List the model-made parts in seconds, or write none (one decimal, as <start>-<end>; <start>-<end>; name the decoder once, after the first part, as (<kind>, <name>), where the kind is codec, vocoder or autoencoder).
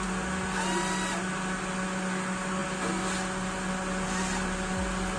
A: none